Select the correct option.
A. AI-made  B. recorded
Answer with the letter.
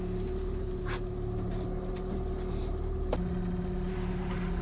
B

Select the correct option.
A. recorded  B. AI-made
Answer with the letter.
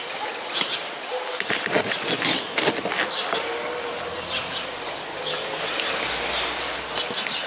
A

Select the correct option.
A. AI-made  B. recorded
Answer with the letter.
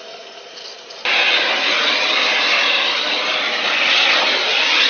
B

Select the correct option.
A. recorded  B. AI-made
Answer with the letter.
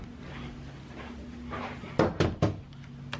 A